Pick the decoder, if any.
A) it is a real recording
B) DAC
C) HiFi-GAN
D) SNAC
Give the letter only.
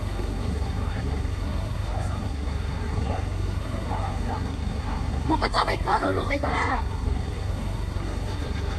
D